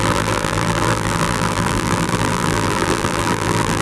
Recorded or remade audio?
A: remade